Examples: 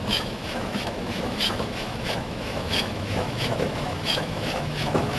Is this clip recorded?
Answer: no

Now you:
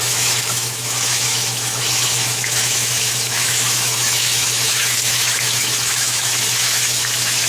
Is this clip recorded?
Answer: no